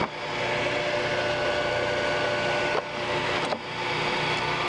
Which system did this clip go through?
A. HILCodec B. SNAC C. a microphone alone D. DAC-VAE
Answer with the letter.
C